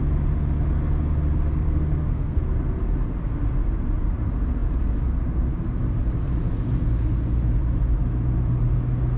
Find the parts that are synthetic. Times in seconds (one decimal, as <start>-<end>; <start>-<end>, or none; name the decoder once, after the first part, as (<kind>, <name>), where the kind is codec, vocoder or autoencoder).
1.5-2.4 (codec, SNAC)